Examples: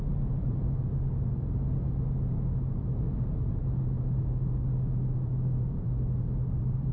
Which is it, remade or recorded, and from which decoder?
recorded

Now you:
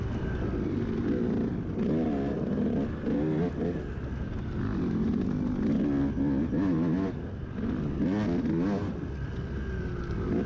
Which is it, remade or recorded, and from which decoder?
recorded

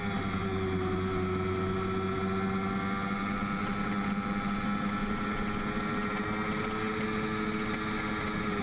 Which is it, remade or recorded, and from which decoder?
recorded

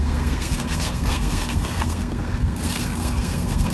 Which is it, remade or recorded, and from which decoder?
remade, codec, SNAC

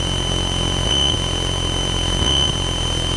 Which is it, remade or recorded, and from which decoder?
recorded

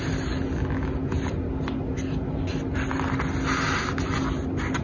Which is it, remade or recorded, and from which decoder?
recorded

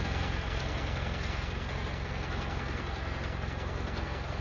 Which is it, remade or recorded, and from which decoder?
remade, codec, SNAC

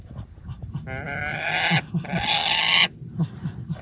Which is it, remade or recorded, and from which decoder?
recorded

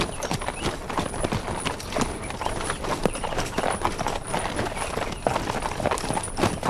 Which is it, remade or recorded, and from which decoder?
remade, vocoder, BigVGAN v2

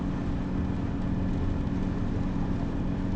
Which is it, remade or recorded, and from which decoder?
recorded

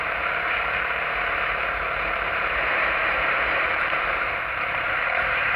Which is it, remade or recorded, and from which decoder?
remade, vocoder, BigVGAN v2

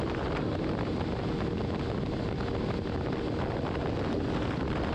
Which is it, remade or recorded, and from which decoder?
recorded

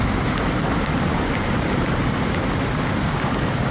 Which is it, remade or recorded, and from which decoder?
recorded